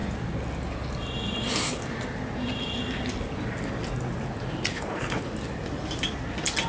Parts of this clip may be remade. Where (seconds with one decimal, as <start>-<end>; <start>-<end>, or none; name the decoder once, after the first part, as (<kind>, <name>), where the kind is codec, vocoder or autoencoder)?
4.7-5.3 (codec, HILCodec)